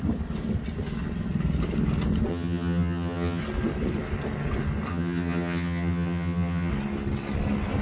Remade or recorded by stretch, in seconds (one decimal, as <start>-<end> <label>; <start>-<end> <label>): 0.0-2.3 recorded; 2.3-3.4 remade; 3.4-4.9 recorded; 4.9-6.7 remade; 6.7-7.8 recorded